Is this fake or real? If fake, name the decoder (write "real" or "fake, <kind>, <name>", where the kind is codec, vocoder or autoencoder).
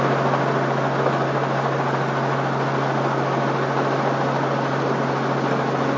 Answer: real